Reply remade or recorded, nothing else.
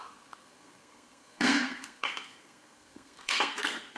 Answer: remade